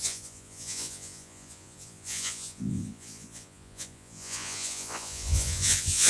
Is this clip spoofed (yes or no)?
yes